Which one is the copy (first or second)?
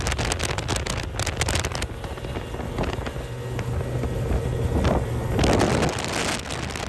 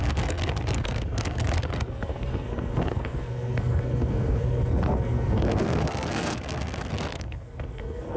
second